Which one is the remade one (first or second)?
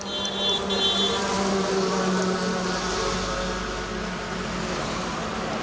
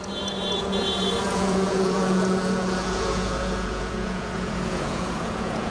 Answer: second